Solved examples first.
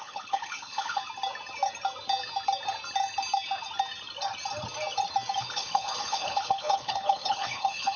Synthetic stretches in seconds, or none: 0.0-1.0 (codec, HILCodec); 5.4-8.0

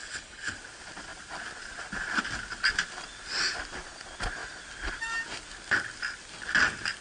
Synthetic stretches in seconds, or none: 0.0-0.6 (codec, HILCodec)